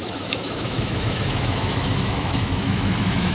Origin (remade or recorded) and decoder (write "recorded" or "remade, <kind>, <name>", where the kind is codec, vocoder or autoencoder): remade, autoencoder, DAC-VAE